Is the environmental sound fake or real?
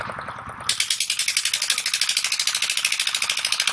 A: real